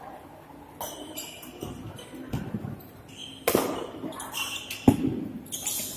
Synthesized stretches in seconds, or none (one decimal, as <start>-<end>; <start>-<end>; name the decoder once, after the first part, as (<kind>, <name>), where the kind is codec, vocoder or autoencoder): none